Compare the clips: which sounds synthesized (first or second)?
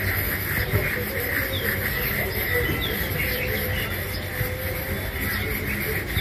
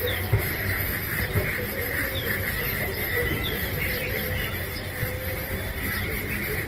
second